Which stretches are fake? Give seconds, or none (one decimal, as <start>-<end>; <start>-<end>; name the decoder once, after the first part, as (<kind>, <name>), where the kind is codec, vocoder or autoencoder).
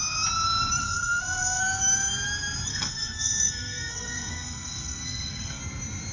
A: 0.8-1.6 (codec, SNAC); 2.7-5.6